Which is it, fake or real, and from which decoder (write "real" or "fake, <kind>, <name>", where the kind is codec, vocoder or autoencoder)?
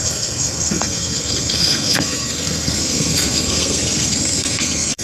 fake, codec, SNAC